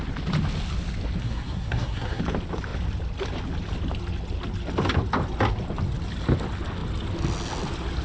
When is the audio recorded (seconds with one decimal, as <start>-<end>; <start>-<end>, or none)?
0.0-1.2; 2.2-8.0